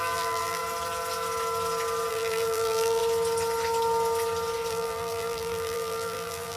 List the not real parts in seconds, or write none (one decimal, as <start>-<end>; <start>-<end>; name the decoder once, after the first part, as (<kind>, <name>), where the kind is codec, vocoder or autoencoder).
0.0-0.6 (vocoder, BigVGAN v2); 2.1-3.0; 4.7-6.6